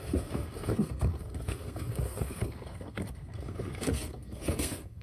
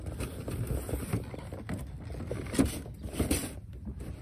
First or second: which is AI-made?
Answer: first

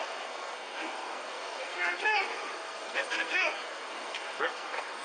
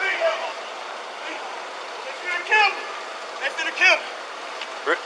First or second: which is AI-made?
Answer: first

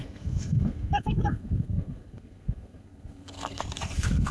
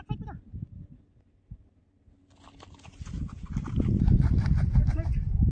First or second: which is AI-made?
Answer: first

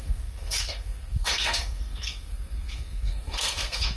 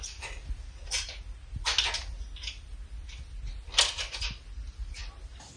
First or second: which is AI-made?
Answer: first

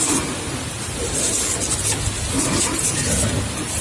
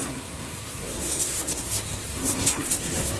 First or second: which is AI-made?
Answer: second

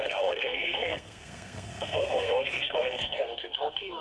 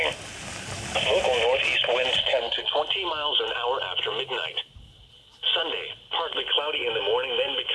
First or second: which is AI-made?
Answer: first